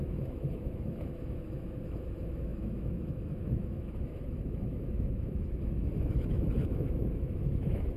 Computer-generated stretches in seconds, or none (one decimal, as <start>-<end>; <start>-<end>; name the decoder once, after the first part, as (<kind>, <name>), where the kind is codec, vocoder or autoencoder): 0.0-8.0 (autoencoder, DAC-VAE)